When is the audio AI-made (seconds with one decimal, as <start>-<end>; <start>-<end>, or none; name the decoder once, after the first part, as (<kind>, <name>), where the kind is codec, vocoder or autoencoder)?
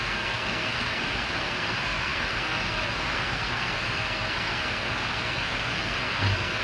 0.0-6.6 (codec, SNAC)